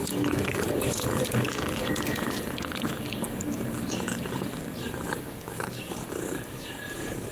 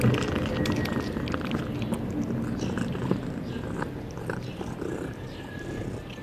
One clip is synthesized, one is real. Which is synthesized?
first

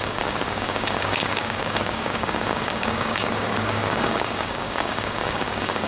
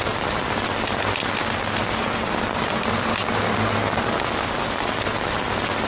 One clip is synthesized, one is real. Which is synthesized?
first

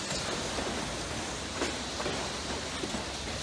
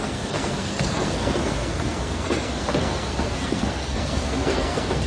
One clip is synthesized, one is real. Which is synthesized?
second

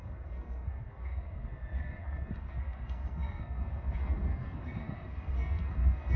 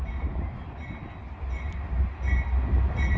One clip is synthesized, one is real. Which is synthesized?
first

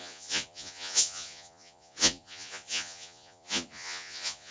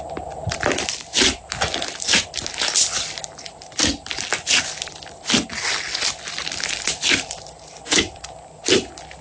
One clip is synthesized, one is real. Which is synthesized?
first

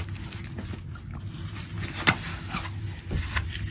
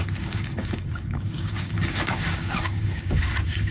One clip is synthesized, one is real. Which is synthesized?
second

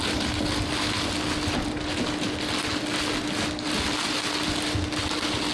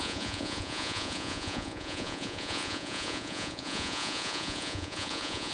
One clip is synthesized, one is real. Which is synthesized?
second